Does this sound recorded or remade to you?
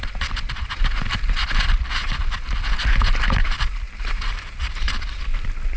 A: recorded